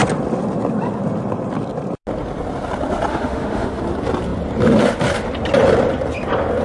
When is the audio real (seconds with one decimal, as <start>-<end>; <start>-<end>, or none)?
0.0-3.1; 3.8-6.6